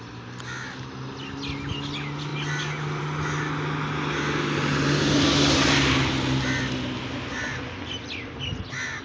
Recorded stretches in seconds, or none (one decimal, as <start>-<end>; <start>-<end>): 0.0-9.0